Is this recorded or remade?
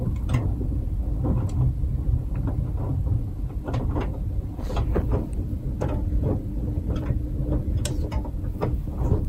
recorded